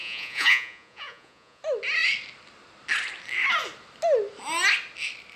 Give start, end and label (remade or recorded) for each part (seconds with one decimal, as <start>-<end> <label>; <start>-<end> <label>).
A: 0.0-1.6 remade; 1.6-5.4 recorded